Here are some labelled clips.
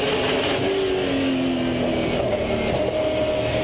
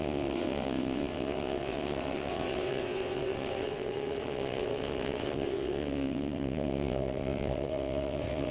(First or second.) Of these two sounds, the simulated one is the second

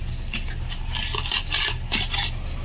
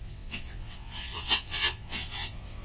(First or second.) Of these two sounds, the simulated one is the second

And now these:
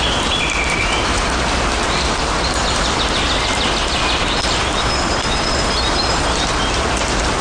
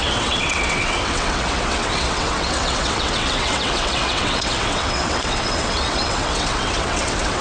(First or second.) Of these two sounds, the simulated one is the second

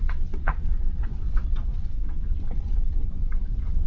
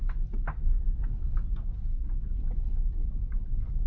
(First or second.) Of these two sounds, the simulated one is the first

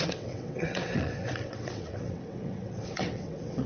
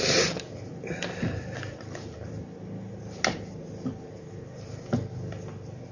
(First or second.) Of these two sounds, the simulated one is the first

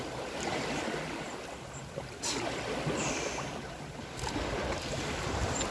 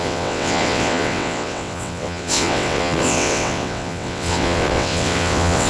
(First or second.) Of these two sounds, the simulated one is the second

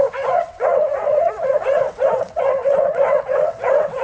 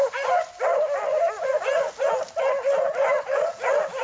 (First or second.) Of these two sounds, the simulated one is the first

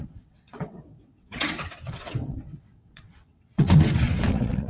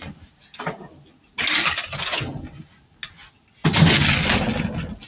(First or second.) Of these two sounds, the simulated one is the first